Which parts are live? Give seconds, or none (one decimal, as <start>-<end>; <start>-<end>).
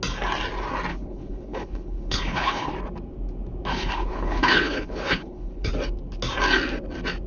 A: 0.0-0.9; 2.7-3.7; 5.7-7.3